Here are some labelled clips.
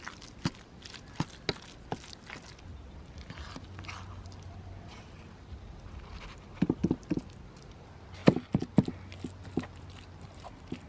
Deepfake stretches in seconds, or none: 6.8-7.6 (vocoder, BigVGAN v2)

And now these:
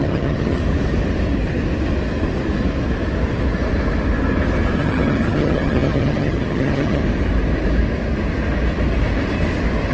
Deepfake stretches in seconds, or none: 0.0-0.6 (vocoder, HiFi-GAN); 4.8-7.0

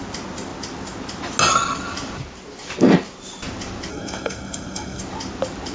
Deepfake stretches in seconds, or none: 3.9-5.0 (codec, SNAC)